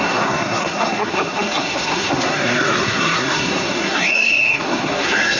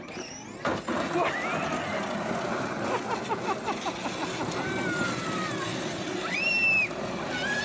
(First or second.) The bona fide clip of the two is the second